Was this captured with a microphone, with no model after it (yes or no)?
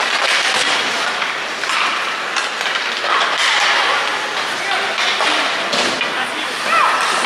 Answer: yes